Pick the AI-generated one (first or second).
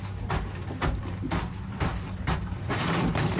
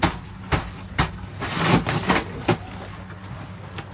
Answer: first